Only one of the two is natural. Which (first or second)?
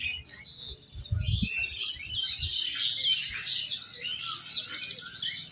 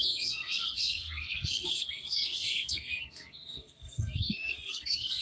first